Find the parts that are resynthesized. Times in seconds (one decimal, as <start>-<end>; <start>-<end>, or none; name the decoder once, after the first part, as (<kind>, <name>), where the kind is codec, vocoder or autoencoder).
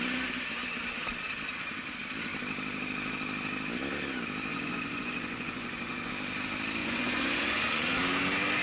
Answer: 4.5-6.1 (vocoder, Vocos); 6.8-8.0